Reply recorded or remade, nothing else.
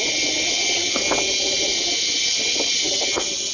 recorded